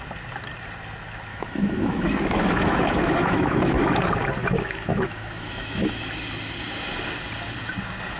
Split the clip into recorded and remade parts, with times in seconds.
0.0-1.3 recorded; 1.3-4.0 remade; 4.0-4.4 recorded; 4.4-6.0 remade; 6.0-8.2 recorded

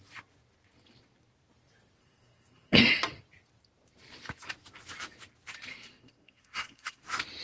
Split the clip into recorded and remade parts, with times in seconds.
0.0-2.0 recorded; 2.0-2.8 remade; 2.8-5.7 recorded; 5.7-7.0 remade; 7.0-7.4 recorded

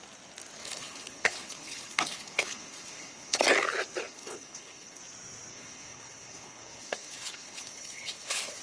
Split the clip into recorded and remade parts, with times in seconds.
0.0-0.6 recorded; 0.6-3.4 remade; 3.4-4.0 recorded; 4.0-5.0 remade; 5.0-5.5 recorded; 5.5-8.6 remade

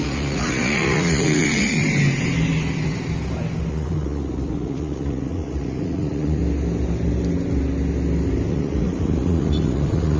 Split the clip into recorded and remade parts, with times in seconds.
0.0-1.8 remade; 1.8-3.7 recorded; 3.7-6.4 remade; 6.4-8.5 recorded; 8.5-10.2 remade